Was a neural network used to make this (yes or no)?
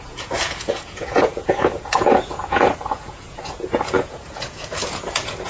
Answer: yes